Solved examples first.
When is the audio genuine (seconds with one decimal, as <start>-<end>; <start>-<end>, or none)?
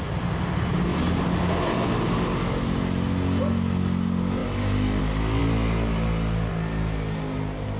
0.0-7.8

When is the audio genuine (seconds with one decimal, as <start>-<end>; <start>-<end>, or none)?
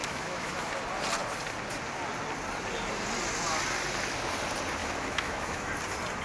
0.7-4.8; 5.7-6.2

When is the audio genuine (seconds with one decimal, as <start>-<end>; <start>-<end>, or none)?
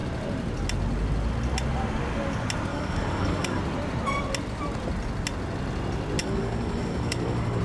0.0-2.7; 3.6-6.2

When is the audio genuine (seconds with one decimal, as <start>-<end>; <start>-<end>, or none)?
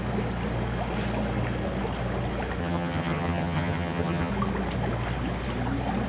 0.0-2.6; 4.3-6.1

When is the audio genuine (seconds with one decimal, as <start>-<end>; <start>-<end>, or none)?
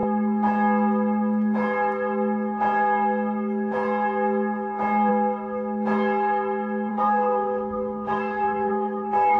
0.0-6.9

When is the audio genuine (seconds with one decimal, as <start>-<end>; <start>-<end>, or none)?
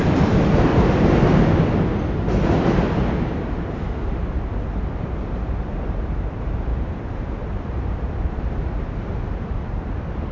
0.7-4.1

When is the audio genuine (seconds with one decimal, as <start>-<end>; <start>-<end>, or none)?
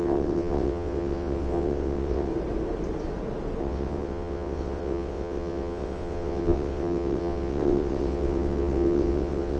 2.3-3.6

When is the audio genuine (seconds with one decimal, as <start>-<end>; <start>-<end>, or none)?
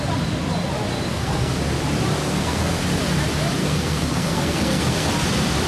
0.0-1.1; 1.6-2.2; 2.8-3.6; 5.1-5.7